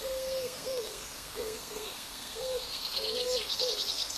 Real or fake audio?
fake